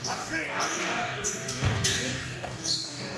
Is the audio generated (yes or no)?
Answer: yes